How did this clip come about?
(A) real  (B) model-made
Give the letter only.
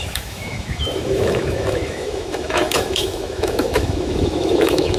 B